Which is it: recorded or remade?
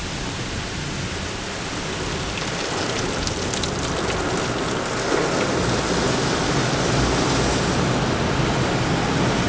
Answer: recorded